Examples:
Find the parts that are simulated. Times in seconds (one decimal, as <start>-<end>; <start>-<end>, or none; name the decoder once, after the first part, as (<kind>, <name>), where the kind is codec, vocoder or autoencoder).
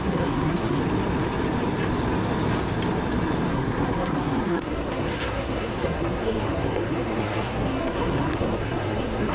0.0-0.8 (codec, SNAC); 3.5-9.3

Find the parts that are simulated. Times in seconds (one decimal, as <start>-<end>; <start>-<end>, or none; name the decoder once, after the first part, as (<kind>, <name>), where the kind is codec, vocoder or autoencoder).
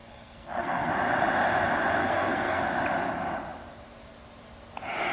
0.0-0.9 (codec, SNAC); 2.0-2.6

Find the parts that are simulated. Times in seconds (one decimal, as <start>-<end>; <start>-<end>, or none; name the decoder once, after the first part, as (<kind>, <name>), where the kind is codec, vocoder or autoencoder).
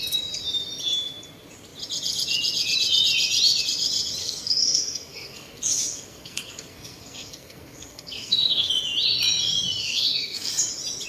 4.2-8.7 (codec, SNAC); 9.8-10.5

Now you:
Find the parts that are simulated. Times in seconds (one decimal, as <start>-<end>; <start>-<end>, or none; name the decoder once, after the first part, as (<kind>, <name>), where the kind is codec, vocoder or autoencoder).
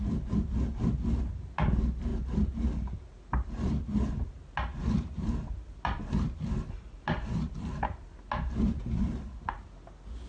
none